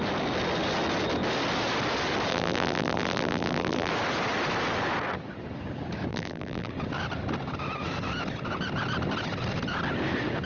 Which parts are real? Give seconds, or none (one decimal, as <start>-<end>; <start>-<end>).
0.0-2.3; 3.9-6.1; 6.7-10.5